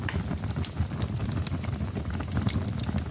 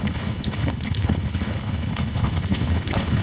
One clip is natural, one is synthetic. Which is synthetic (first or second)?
second